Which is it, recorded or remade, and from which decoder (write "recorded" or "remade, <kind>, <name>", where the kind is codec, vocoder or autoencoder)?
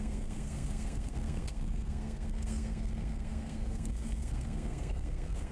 remade, codec, SNAC